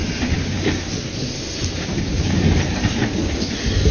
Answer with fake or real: real